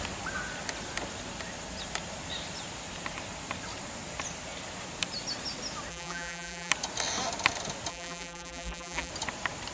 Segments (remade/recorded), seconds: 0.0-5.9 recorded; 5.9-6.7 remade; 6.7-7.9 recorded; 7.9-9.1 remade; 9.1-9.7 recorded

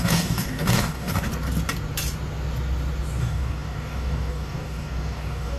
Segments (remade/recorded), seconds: 0.0-1.3 remade; 1.3-3.2 recorded; 3.2-5.6 remade

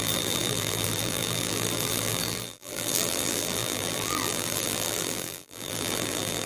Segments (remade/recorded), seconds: 0.0-6.5 remade

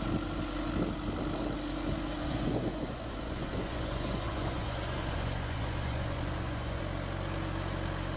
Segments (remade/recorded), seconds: 0.0-2.2 recorded; 2.2-6.8 remade; 6.8-8.2 recorded